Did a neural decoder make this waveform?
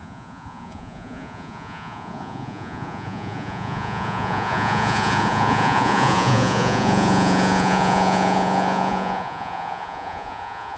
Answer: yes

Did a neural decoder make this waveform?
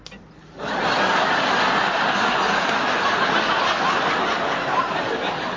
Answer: no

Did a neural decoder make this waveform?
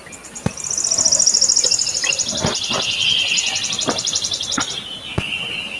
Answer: no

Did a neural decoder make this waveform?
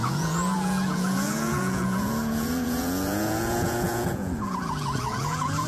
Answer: yes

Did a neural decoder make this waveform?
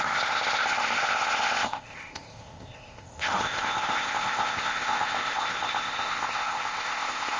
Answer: yes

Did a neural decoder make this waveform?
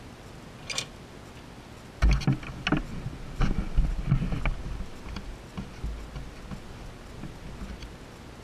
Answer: no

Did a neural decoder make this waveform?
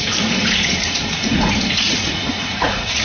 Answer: yes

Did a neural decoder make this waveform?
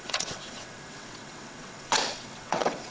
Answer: yes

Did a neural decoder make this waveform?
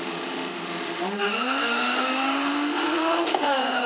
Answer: yes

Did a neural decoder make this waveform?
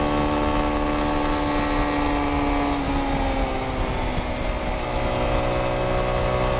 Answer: no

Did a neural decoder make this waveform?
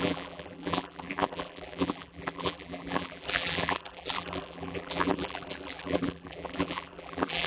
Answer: yes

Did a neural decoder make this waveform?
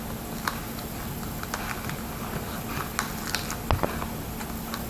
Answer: no